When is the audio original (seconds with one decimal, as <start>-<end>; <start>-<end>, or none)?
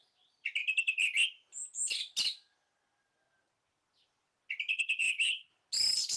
0.0-4.7; 5.5-6.2